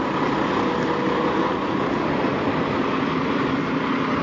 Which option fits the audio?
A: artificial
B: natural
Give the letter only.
B